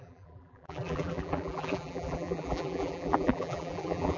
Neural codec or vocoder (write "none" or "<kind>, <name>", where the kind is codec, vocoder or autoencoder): vocoder, BigVGAN v2